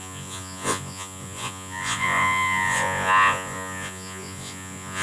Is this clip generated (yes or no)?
yes